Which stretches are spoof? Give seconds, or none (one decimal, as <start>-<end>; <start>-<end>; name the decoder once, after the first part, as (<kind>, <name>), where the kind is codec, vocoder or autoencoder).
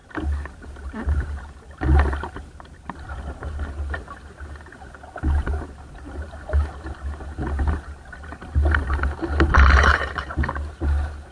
none